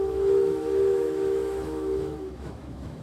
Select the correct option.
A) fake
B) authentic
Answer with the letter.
A